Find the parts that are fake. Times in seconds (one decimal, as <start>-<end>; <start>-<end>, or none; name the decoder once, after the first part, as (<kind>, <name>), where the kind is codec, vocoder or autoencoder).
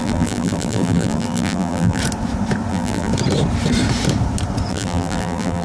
0.0-2.0 (vocoder, BigVGAN v2); 2.7-3.1; 4.7-5.6